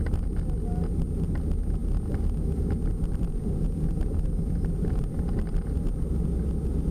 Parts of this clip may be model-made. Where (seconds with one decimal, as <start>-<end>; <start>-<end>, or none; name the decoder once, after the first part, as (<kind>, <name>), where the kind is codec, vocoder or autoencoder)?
none